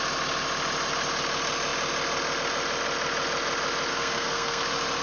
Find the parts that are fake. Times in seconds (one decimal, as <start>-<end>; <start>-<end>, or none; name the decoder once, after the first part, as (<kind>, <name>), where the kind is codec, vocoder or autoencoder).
3.9-4.6 (codec, SNAC)